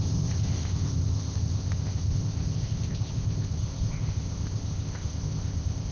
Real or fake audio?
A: fake